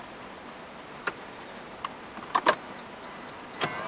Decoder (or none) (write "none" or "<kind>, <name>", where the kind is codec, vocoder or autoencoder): none